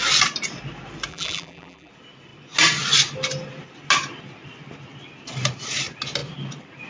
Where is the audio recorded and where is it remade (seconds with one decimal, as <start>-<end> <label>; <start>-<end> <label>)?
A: 0.0-1.1 recorded; 1.1-1.9 remade; 1.9-6.9 recorded